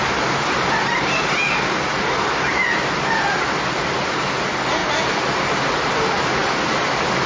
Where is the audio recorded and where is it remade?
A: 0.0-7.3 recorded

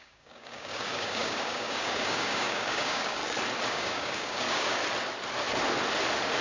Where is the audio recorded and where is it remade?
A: 0.0-3.2 remade; 3.2-3.7 recorded; 3.7-4.8 remade; 4.8-6.4 recorded

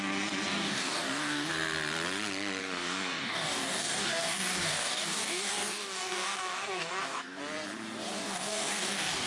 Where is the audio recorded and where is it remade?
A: 0.0-0.6 recorded; 0.6-1.5 remade; 1.5-2.6 recorded; 2.6-7.4 remade; 7.4-8.1 recorded; 8.1-9.3 remade